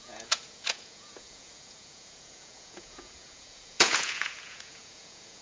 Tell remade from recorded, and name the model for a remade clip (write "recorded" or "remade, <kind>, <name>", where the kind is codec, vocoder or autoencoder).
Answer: remade, vocoder, Vocos